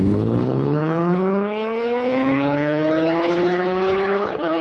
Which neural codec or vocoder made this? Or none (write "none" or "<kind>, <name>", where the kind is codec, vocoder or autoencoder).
codec, HILCodec